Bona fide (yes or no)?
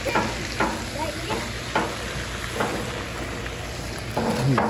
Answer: yes